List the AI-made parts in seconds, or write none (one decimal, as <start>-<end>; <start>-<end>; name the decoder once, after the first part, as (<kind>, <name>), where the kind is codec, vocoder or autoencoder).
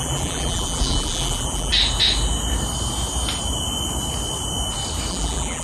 0.0-1.7 (vocoder, BigVGAN v2); 5.1-5.6